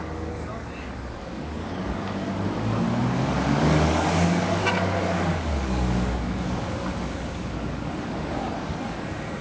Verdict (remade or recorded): remade